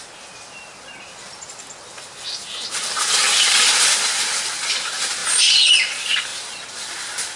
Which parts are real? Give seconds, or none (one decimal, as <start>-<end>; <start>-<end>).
0.0-7.4